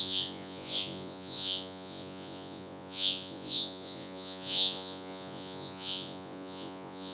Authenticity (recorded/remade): remade